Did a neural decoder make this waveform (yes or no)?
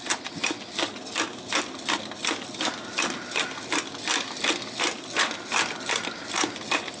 no